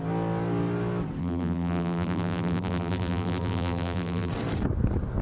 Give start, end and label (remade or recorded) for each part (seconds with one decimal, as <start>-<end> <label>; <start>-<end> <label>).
0.0-1.2 recorded; 1.2-4.3 remade; 4.3-5.2 recorded